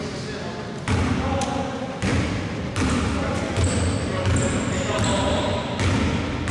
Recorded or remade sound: recorded